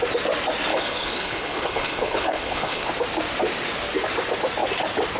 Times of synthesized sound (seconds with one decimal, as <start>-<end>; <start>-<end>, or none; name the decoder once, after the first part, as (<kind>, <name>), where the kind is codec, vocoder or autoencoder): 0.7-2.9 (codec, HILCodec)